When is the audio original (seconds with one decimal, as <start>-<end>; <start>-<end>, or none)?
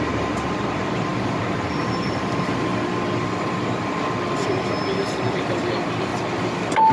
2.7-5.6; 6.1-6.9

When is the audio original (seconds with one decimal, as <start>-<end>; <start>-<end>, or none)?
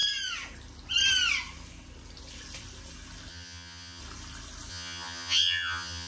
0.0-3.3; 4.0-4.7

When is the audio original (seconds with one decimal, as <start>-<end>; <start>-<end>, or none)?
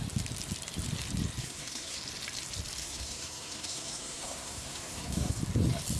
0.0-1.4; 2.0-2.8; 5.4-6.0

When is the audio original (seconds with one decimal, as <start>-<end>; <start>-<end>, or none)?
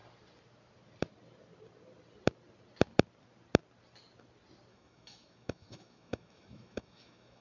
0.0-4.7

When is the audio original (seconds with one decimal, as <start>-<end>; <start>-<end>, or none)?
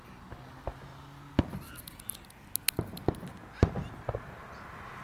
0.0-5.0